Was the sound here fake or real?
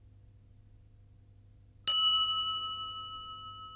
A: real